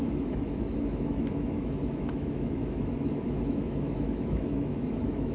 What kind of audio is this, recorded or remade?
remade